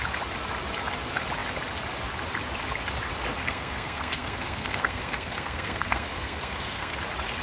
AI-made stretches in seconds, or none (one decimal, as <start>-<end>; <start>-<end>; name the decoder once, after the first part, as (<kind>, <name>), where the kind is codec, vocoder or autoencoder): 3.4-7.0 (codec, SNAC)